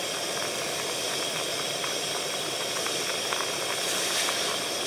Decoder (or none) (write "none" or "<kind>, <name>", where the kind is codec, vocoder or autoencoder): none